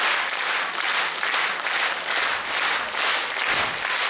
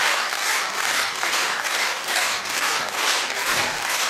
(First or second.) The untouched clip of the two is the first